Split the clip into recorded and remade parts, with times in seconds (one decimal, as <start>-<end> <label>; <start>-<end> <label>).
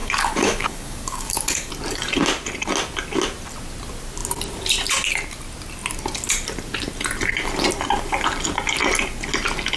0.0-1.7 remade; 1.7-9.8 recorded